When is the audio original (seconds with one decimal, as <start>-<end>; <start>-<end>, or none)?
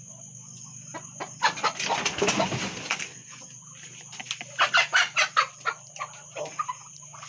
0.0-7.3